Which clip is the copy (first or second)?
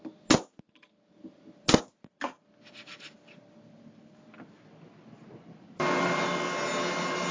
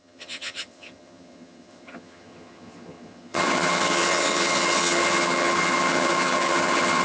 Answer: second